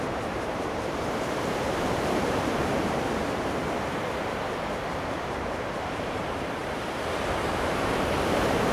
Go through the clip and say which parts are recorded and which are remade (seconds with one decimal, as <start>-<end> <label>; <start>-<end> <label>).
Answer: 0.0-3.9 remade; 3.9-4.9 recorded; 4.9-6.6 remade; 6.6-7.5 recorded; 7.5-8.7 remade